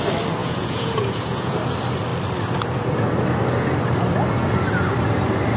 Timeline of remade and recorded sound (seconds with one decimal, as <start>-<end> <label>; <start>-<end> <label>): 0.0-0.4 recorded; 0.4-1.5 remade; 1.5-5.6 recorded